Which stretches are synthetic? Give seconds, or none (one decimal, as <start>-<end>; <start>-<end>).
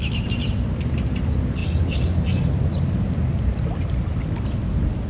none